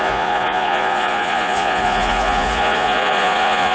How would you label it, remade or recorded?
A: remade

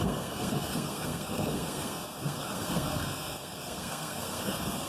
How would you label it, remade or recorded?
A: remade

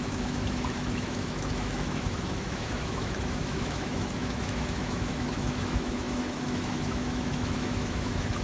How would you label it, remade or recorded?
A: remade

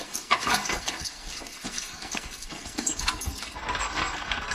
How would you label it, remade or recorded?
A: remade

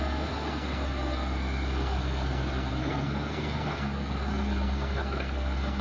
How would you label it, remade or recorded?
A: remade